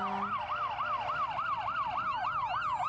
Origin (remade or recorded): remade